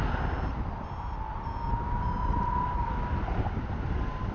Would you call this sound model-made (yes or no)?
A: no